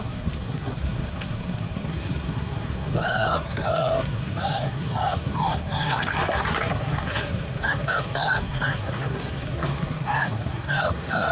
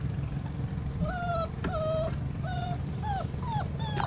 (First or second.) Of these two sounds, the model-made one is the first